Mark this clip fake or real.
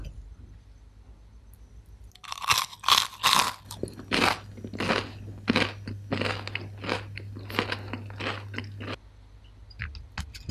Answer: real